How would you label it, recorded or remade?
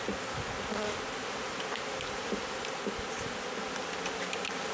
recorded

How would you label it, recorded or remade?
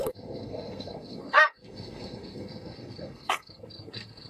remade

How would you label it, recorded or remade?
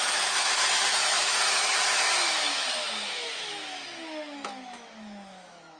remade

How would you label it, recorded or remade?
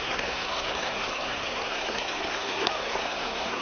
remade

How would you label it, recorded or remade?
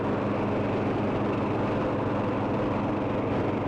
recorded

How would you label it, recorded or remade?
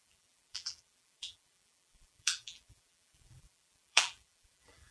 remade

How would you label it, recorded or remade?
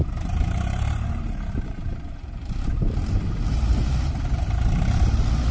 remade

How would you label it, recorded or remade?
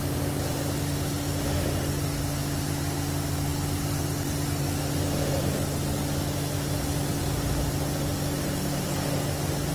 recorded